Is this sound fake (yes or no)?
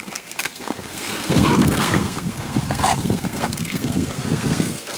yes